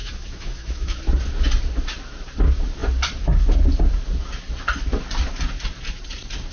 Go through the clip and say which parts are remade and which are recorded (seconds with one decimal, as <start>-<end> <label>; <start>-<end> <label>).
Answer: 0.0-1.0 remade; 1.0-6.5 recorded